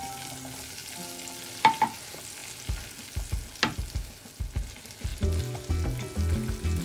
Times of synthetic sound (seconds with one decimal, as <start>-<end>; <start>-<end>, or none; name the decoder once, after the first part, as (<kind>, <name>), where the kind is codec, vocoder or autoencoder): none